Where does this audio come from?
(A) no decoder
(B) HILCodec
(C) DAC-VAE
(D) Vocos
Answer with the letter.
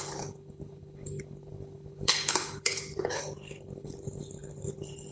B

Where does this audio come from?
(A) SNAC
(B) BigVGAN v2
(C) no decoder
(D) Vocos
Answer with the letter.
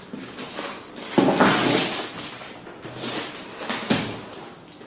C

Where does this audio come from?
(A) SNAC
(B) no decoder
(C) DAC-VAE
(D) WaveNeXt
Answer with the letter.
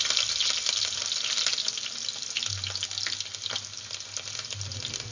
B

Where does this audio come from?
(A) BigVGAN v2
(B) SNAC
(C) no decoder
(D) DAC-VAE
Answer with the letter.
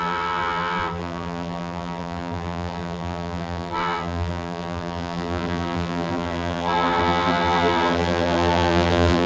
A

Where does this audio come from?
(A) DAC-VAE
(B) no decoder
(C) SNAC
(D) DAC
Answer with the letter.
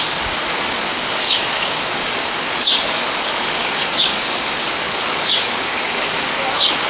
D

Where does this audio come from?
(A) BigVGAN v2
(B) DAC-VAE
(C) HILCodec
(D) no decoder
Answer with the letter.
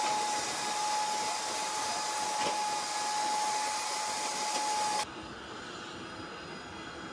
D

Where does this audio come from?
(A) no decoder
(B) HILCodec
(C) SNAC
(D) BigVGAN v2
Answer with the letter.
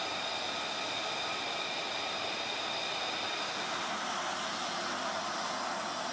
A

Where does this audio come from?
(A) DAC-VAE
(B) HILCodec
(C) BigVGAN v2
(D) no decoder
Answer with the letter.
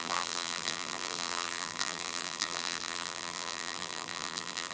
C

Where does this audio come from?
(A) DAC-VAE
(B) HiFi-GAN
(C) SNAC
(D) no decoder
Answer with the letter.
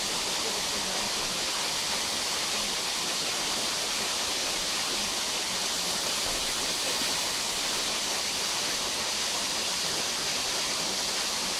D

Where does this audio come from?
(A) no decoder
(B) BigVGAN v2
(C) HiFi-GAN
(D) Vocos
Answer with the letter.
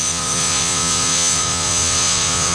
D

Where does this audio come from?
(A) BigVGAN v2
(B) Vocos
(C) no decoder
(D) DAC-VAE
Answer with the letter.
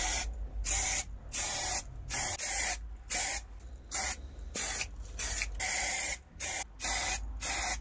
C